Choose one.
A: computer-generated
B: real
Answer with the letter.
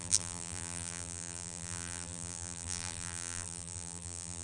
A